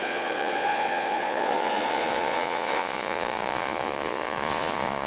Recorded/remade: remade